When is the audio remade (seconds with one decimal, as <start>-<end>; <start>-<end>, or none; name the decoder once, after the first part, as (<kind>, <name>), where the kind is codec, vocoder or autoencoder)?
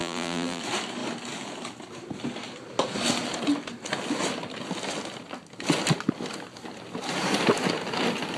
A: 0.0-0.6 (vocoder, BigVGAN v2)